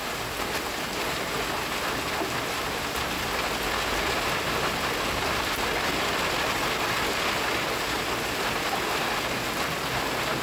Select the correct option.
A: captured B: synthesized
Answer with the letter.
A